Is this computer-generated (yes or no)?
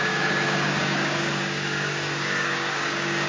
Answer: yes